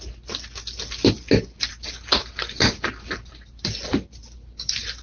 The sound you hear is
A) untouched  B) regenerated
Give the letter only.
A